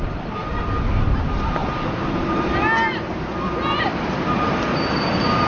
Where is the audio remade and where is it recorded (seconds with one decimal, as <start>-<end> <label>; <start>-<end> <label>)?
0.0-5.5 recorded